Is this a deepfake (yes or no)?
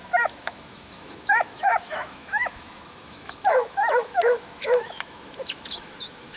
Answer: yes